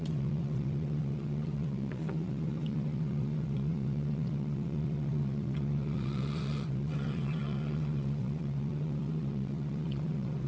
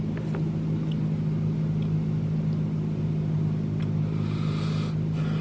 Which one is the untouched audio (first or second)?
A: second